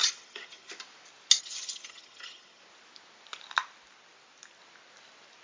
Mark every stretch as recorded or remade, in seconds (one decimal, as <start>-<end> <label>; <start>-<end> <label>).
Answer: 0.0-0.7 remade; 0.7-1.4 recorded; 1.4-2.6 remade; 2.6-5.4 recorded